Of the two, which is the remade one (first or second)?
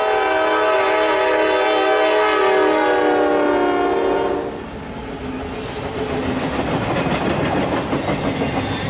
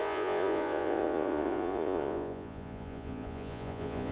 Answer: second